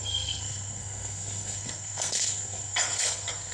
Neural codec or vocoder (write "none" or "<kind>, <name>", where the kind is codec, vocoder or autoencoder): codec, SNAC